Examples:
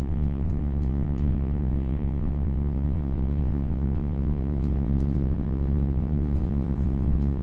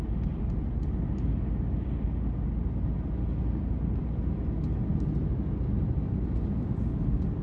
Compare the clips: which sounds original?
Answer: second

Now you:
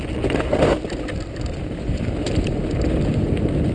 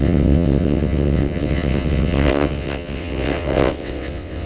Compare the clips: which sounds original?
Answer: first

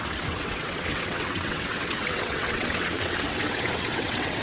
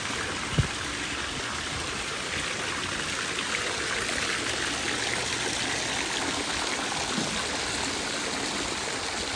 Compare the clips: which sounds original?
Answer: second